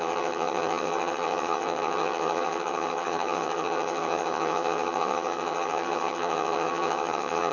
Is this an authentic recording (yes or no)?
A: no